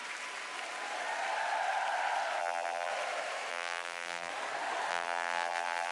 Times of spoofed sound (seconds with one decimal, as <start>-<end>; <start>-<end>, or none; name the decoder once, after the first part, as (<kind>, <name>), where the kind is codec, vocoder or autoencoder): 2.4-2.9 (vocoder, BigVGAN v2); 3.5-4.3; 4.9-5.9